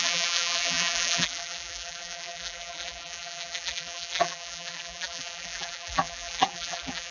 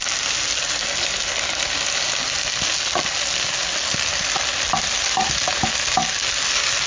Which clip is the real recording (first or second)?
second